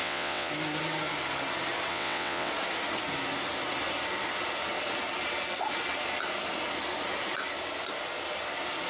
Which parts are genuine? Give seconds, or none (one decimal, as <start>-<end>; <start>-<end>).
0.5-1.9; 2.5-8.9